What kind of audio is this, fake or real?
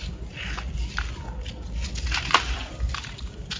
real